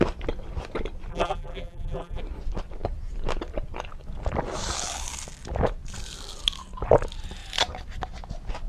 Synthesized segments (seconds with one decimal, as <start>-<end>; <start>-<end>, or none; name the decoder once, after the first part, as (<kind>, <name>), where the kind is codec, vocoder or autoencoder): 1.1-2.2 (vocoder, BigVGAN v2)